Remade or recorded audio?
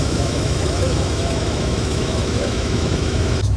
remade